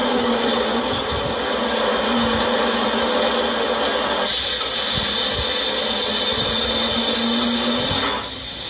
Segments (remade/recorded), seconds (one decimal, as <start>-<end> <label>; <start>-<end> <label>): 0.0-2.4 remade; 2.4-8.7 recorded